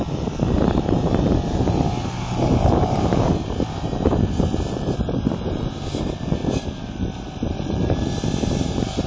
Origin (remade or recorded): remade